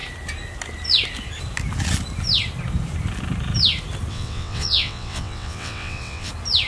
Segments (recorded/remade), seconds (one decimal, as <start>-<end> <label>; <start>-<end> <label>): 0.0-4.1 recorded; 4.1-6.3 remade; 6.3-6.7 recorded